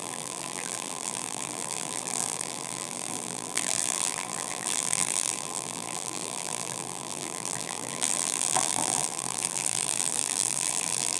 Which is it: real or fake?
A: fake